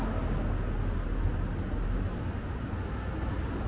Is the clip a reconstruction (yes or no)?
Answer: no